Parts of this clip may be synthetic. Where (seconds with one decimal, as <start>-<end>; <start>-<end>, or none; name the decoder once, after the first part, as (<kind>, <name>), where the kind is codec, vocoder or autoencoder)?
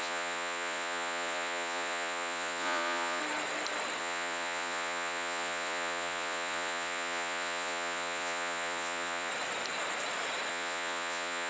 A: 0.0-3.2 (vocoder, Vocos); 4.0-9.3; 10.5-11.5